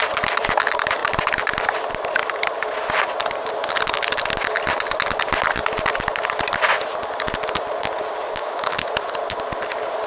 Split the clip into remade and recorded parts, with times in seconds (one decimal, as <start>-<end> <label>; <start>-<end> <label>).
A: 0.0-8.4 recorded; 8.4-8.9 remade; 8.9-10.1 recorded